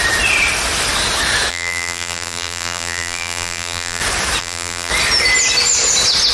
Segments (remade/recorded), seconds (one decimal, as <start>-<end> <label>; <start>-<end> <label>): 0.0-1.5 recorded; 1.5-4.0 remade; 4.0-4.4 recorded; 4.4-4.9 remade; 4.9-6.3 recorded